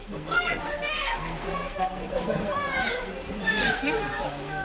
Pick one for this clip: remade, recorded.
remade